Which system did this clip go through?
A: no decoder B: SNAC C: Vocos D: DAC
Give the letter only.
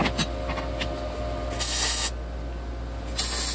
A